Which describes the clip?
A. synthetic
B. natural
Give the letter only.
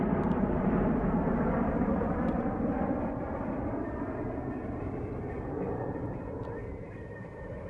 A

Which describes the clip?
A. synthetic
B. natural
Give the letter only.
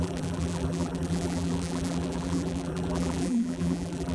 A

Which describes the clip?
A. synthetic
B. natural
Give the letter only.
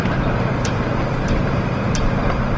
A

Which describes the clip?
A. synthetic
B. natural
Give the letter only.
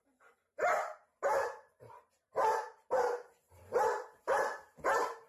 A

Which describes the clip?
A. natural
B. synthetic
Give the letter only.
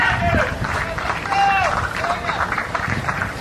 B